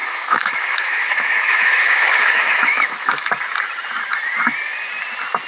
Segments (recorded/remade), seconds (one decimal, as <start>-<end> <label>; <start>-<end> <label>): 0.0-3.3 remade; 3.3-5.5 recorded